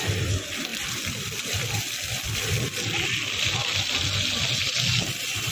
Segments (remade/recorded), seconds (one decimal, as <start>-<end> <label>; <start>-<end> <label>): 0.0-5.5 recorded